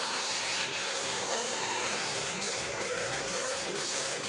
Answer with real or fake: fake